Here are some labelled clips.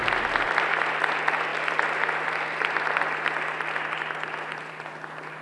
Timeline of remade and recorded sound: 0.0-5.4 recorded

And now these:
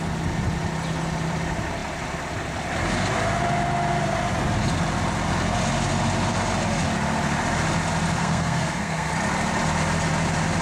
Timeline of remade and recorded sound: 0.0-8.2 recorded; 8.2-9.1 remade; 9.1-10.6 recorded

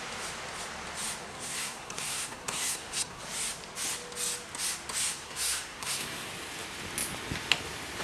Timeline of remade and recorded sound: 0.0-1.3 recorded; 1.3-3.2 remade; 3.2-5.1 recorded; 5.1-6.3 remade; 6.3-8.0 recorded